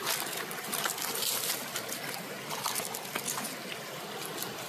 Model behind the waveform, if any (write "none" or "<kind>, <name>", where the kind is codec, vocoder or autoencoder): none